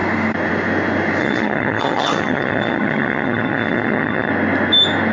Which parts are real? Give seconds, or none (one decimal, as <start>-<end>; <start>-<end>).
0.0-1.2; 4.3-5.1